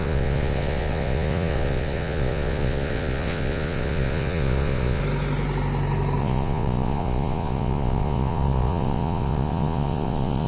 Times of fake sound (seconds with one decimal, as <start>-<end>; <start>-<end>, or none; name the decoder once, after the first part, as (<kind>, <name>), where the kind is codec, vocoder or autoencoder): 0.0-5.0 (vocoder, Vocos); 6.2-10.5